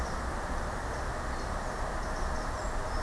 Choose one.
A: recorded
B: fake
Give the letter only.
A